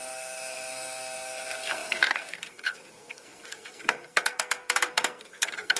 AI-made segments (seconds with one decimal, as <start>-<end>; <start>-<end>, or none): 0.0-5.8